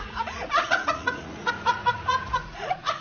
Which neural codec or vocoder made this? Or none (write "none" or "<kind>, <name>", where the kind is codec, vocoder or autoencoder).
vocoder, Vocos